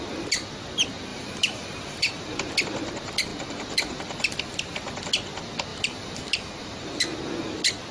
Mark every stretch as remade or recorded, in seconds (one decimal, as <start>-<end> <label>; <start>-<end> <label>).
0.0-1.1 recorded; 1.1-2.5 remade; 2.5-3.3 recorded; 3.3-4.3 remade; 4.3-5.7 recorded; 5.7-6.9 remade; 6.9-7.9 recorded